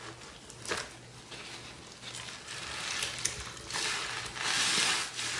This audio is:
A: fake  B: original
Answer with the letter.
B